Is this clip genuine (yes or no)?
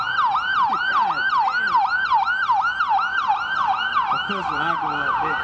yes